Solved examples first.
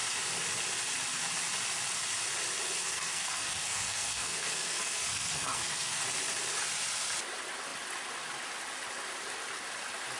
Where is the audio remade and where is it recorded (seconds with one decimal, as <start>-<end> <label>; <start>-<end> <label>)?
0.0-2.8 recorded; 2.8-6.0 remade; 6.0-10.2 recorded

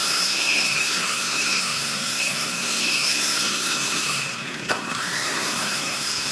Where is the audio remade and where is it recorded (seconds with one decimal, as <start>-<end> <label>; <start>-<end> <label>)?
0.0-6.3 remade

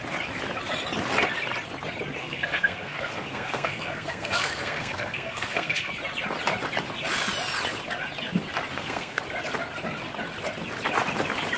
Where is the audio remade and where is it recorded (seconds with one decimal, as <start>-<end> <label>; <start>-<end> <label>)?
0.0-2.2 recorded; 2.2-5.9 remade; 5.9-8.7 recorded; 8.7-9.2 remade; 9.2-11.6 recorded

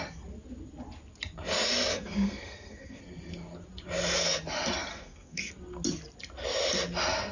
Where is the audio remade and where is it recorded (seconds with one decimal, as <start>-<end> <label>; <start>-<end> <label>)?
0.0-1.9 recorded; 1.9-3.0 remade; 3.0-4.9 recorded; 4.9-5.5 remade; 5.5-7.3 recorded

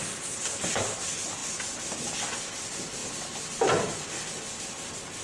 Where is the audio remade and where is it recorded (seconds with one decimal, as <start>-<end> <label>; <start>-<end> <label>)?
0.0-5.2 recorded